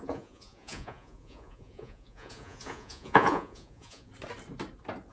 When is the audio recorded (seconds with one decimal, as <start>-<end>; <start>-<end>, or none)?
4.1-5.1